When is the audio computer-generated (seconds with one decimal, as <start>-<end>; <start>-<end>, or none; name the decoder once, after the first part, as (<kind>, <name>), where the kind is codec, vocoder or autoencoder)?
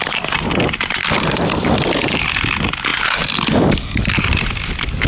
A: none